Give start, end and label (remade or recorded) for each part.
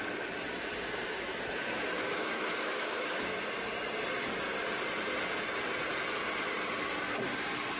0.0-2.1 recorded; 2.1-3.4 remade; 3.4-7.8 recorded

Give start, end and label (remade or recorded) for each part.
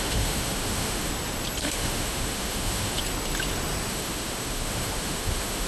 0.0-1.1 remade; 1.1-1.6 recorded; 1.6-3.0 remade; 3.0-3.9 recorded; 3.9-5.7 remade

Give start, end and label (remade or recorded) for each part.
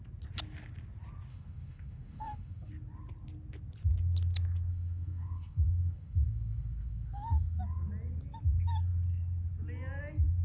0.0-1.3 recorded; 1.3-2.7 remade; 2.7-4.7 recorded; 4.7-7.6 remade; 7.6-10.4 recorded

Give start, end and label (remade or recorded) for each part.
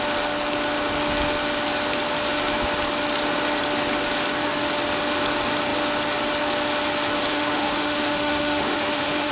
0.0-7.3 recorded; 7.3-9.3 remade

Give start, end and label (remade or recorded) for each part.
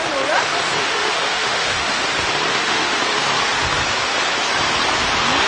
0.0-0.8 recorded; 0.8-2.0 remade; 2.0-2.5 recorded; 2.5-3.0 remade; 3.0-5.5 recorded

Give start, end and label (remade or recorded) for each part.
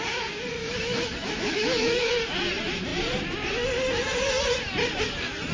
0.0-0.6 recorded; 0.6-2.1 remade; 2.1-5.5 recorded